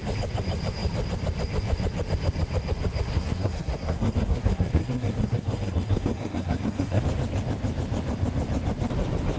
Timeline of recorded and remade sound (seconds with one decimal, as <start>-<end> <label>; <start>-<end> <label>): 0.0-3.1 recorded; 3.1-7.0 remade; 7.0-9.4 recorded